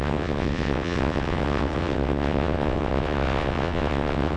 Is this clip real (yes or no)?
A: no